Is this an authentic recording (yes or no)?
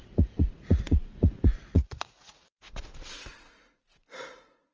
no